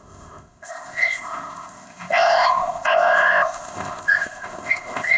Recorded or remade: remade